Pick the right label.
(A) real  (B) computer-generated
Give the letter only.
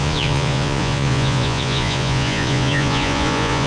B